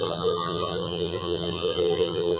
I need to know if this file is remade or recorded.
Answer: remade